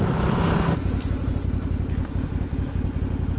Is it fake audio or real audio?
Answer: real